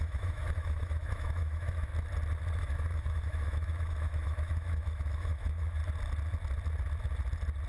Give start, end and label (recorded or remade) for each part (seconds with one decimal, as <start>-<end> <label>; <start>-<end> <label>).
0.0-1.9 remade; 1.9-2.6 recorded; 2.6-5.8 remade; 5.8-7.7 recorded